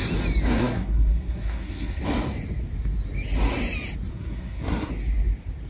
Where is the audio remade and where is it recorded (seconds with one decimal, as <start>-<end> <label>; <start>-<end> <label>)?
0.0-0.6 recorded; 0.6-2.0 remade; 2.0-4.1 recorded; 4.1-4.9 remade; 4.9-5.7 recorded